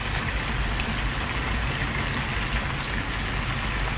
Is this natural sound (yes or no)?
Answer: yes